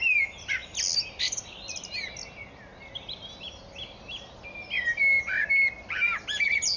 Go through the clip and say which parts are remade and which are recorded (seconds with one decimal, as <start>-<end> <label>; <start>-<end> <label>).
0.0-6.8 recorded